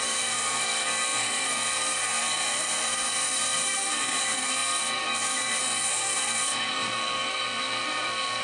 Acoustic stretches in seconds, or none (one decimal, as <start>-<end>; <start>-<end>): none